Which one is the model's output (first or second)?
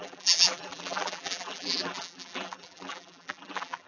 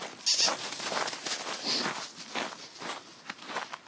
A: first